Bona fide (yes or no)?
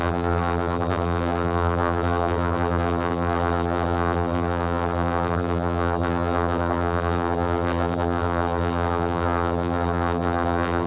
no